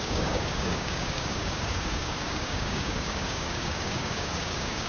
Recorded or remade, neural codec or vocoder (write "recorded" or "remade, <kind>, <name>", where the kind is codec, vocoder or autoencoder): remade, codec, DAC